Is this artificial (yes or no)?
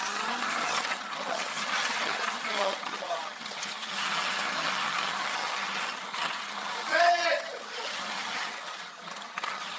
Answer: yes